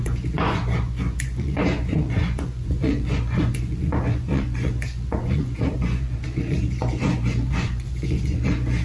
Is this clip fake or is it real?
fake